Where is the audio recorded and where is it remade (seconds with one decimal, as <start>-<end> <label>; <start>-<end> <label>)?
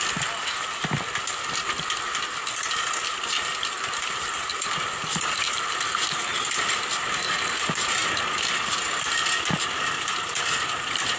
0.0-0.5 remade; 0.5-3.1 recorded; 3.1-8.0 remade; 8.0-10.3 recorded; 10.3-11.2 remade